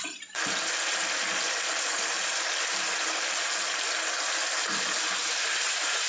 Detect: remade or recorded recorded